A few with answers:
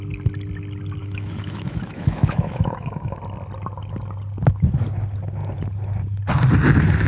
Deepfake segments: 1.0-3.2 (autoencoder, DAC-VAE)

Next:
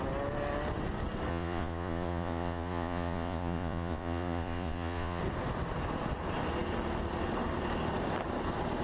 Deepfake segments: 1.3-5.2 (vocoder, Vocos)

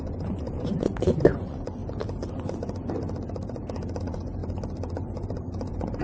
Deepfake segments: 0.0-1.8 (vocoder, Vocos); 4.0-4.4; 5.4-6.0

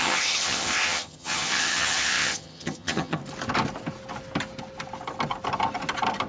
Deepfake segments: 0.0-3.2 (vocoder, HiFi-GAN)

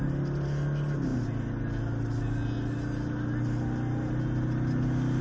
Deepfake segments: none